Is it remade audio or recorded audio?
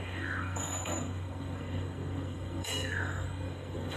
remade